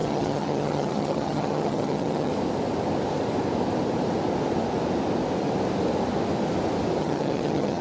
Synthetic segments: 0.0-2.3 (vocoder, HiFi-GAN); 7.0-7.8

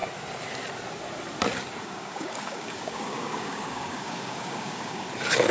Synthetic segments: 1.8-5.1 (codec, DAC)

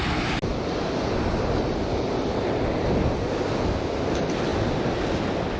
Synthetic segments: none

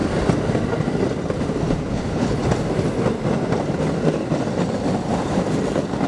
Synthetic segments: 1.9-2.4 (codec, HILCodec)

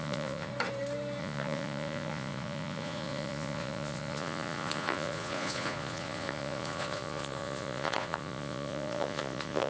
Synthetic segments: 0.0-0.5 (vocoder, Vocos); 1.2-9.7

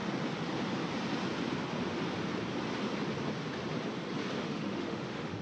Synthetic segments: 4.4-5.4 (autoencoder, DAC-VAE)

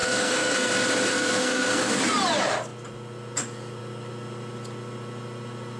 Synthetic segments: 0.0-0.7 (codec, SNAC); 1.1-2.0

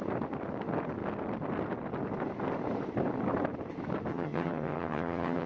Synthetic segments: 4.1-5.5 (vocoder, HiFi-GAN)